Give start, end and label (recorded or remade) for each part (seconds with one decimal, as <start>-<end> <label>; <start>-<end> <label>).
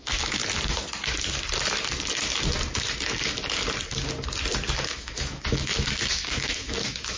0.0-0.4 remade; 0.4-4.7 recorded; 4.7-7.2 remade